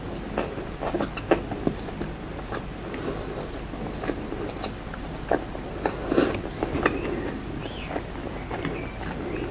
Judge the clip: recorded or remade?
recorded